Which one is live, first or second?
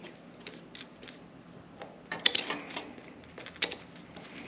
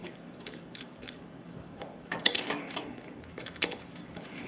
first